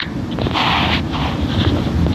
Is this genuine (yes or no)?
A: no